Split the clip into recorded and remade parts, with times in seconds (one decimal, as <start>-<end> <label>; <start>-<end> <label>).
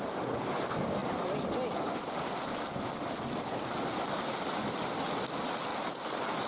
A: 0.0-6.5 recorded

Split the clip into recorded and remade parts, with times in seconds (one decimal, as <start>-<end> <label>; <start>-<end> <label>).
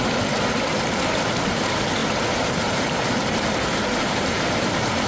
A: 0.0-2.0 recorded; 2.0-5.1 remade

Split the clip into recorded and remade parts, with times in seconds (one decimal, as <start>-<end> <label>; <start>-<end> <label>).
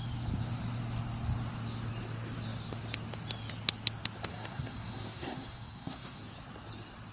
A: 0.0-4.3 recorded; 4.3-6.2 remade; 6.2-7.1 recorded